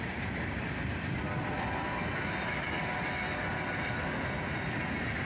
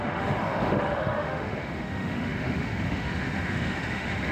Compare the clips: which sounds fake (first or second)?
second